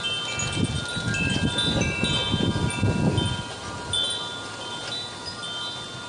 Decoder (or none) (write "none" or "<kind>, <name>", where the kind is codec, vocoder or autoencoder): none